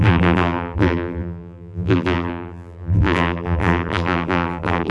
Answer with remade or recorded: remade